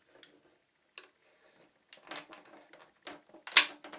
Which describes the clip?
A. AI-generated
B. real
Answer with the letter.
B